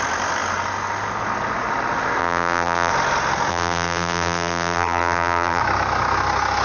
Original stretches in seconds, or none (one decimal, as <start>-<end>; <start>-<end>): 0.0-2.2; 2.9-3.5; 5.6-6.6